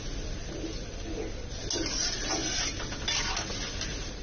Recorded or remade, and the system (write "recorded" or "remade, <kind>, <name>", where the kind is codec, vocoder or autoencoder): recorded